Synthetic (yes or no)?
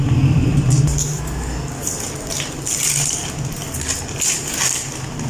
no